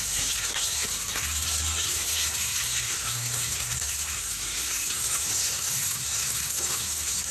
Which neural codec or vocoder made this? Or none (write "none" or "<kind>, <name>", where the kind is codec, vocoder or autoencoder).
codec, SNAC